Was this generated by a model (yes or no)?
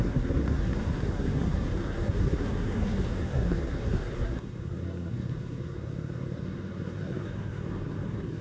yes